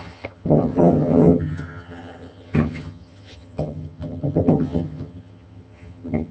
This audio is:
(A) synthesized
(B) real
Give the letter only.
A